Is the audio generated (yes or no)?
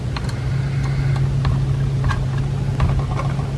no